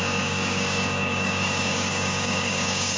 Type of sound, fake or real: fake